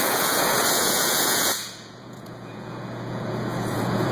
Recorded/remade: remade